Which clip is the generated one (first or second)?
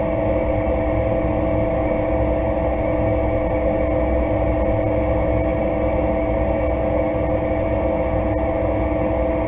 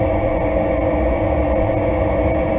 second